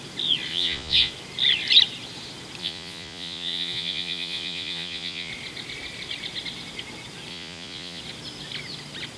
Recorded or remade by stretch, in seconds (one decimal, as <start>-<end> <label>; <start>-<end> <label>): 0.0-0.5 recorded; 0.5-1.1 remade; 1.1-2.6 recorded; 2.6-5.3 remade; 5.3-7.3 recorded; 7.3-8.0 remade; 8.0-9.2 recorded